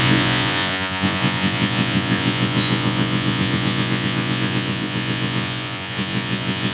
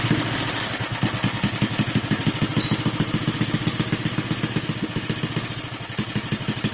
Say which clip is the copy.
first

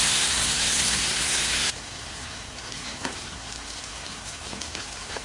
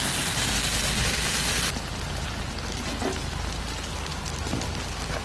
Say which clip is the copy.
first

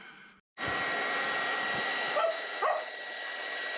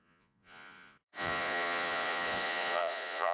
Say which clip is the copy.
second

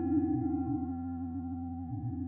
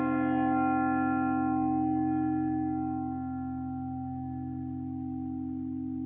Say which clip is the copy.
first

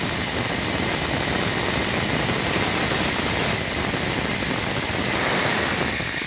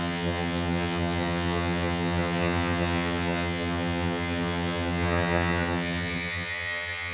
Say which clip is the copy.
second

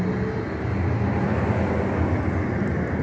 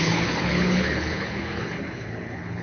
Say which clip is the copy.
second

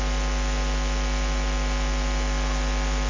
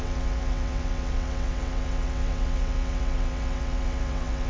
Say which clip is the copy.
second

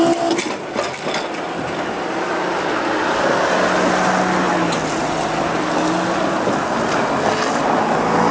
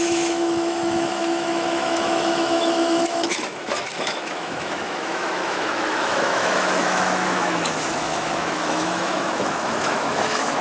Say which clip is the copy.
second